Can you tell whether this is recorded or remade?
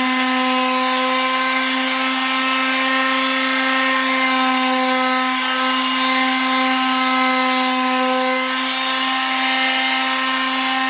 recorded